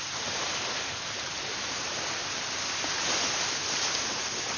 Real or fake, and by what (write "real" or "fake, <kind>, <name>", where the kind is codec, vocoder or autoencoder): fake, vocoder, BigVGAN v2